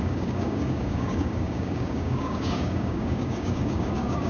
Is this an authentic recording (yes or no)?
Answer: no